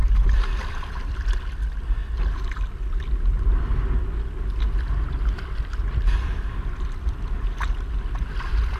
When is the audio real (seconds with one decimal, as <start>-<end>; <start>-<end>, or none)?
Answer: 1.3-8.8

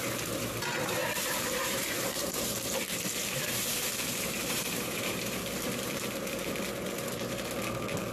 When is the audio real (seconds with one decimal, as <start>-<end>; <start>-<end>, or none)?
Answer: 0.0-1.0; 5.4-8.1

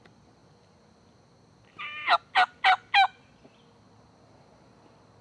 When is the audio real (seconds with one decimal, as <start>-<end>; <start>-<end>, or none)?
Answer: 0.0-5.2

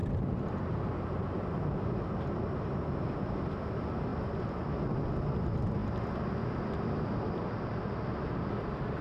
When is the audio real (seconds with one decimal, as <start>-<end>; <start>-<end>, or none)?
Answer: 2.2-4.1; 4.8-9.0

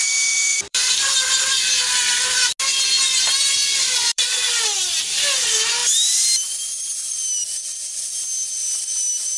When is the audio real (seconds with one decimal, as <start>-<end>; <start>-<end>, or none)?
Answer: 0.0-0.5; 2.5-3.6; 4.4-9.4

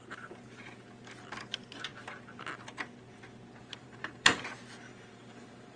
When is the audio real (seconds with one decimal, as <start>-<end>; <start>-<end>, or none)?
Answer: 0.0-3.6; 4.4-4.9

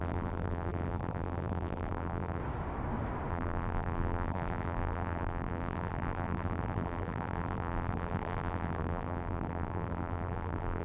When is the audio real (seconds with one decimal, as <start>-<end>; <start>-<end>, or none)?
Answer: 2.4-3.3